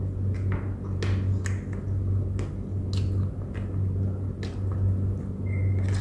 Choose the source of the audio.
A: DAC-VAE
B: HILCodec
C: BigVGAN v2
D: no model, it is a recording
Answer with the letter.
D